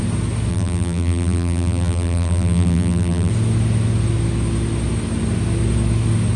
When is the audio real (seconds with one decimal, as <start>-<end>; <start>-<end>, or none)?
0.0-0.5; 3.3-6.4